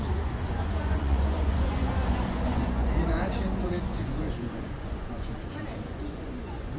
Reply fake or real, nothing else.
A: fake